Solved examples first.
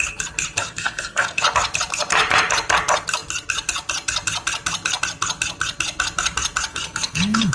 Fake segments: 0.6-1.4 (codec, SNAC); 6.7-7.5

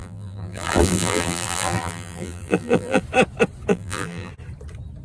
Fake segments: 0.0-3.0 (vocoder, BigVGAN v2); 3.7-4.3

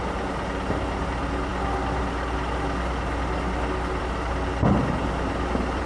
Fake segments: none